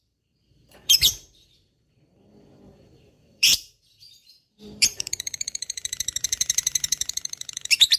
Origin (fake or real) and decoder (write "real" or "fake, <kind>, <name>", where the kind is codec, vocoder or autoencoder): fake, vocoder, BigVGAN v2